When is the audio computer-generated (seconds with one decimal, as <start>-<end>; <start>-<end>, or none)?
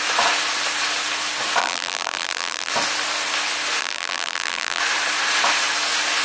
1.6-2.7; 3.8-4.8